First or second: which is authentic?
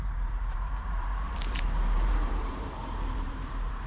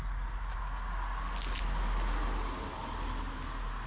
second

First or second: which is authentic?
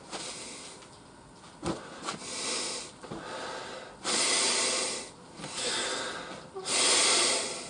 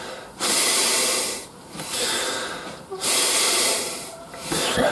first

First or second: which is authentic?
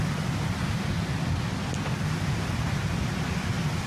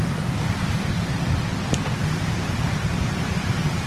first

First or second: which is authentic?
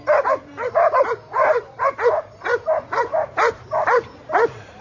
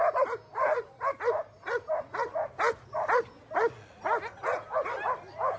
second